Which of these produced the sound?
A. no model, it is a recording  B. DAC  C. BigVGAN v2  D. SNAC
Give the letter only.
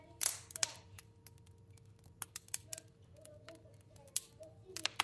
A